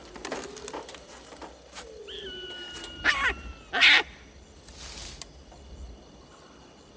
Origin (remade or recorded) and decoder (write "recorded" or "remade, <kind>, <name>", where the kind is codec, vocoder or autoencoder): recorded